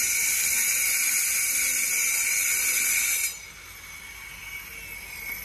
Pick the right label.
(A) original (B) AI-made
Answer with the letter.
A